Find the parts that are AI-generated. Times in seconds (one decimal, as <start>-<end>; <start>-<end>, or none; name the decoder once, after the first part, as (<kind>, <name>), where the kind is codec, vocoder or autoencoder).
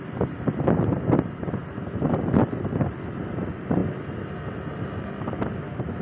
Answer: none